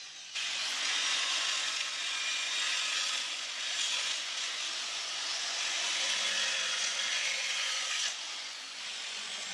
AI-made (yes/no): yes